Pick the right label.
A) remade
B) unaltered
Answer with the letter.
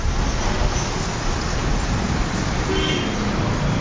B